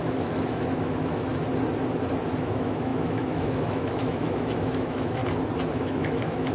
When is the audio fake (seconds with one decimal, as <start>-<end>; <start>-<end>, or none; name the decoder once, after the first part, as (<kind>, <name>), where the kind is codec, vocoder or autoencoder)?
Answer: 0.0-1.3 (autoencoder, DAC-VAE); 2.4-5.2; 5.7-6.5